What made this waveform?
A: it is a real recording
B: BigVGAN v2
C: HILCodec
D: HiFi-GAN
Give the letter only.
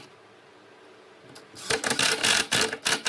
A